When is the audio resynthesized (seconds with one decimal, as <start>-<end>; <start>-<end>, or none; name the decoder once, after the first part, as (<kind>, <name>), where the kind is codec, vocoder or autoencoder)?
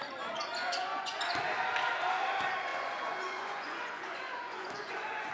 0.6-1.2 (vocoder, Vocos); 2.7-5.3